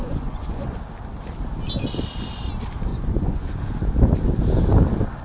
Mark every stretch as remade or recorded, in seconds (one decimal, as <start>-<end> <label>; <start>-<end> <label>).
0.0-0.8 remade; 0.8-2.9 recorded; 2.9-3.5 remade; 3.5-5.2 recorded